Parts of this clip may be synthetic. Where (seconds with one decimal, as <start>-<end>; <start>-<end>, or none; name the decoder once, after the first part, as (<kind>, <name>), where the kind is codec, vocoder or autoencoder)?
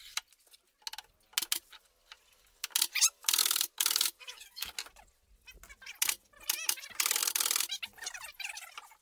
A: 3.4-4.7 (codec, DAC)